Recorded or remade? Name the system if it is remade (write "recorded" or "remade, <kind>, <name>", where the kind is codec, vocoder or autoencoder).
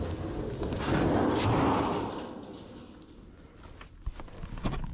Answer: recorded